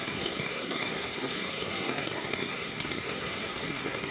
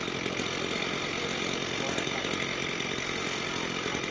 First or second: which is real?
second